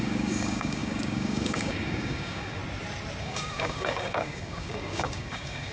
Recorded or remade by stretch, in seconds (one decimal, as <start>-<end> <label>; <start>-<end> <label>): 0.0-2.6 remade; 2.6-3.2 recorded; 3.2-5.7 remade